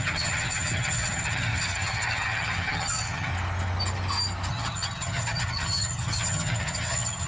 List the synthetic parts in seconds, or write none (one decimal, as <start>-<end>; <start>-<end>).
0.0-3.3; 4.5-7.3